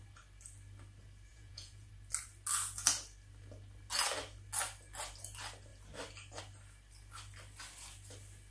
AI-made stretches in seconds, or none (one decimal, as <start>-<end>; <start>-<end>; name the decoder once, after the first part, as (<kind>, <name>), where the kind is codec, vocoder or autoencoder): 1.3-1.9 (vocoder, Vocos)